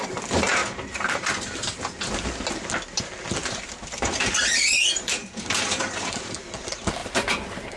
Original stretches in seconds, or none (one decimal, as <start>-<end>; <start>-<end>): 0.0-0.6; 2.5-3.4; 6.4-7.8